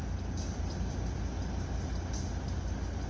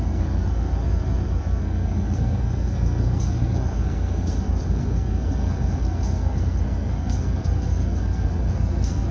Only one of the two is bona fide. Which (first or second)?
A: first